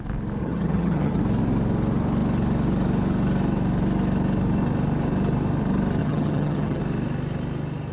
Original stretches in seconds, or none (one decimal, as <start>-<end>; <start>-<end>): 0.0-0.4; 1.2-6.0; 6.8-7.9